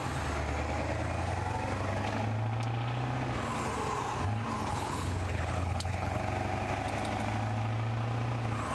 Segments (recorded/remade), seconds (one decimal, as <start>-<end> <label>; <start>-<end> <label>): 0.0-4.7 recorded; 4.7-6.2 remade; 6.2-8.7 recorded